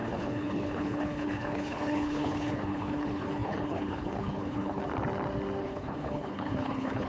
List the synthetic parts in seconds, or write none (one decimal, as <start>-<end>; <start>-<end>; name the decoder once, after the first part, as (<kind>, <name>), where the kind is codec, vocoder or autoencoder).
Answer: 0.0-4.8 (codec, HILCodec); 5.6-7.1